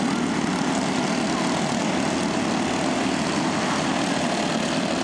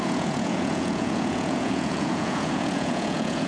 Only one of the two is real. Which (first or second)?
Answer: first